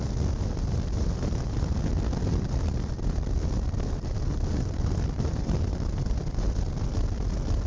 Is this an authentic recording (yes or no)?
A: yes